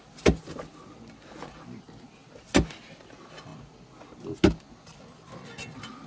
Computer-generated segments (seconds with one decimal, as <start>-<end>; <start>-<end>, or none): none

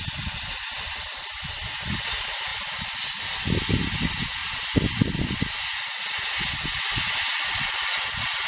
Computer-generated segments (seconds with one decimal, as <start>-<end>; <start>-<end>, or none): none

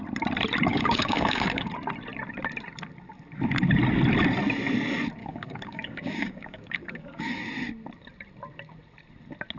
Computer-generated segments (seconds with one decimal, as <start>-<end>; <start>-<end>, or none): 0.7-1.7; 5.2-7.4

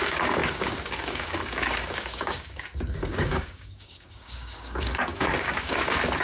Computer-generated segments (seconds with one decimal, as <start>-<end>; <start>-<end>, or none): 0.0-6.2

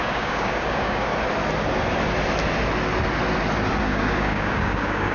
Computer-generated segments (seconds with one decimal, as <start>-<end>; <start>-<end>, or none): 0.0-1.1; 3.8-5.1